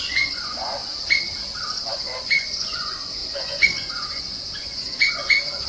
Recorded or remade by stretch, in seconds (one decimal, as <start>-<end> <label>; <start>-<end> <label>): 0.0-0.8 remade; 0.8-1.8 recorded; 1.8-5.7 remade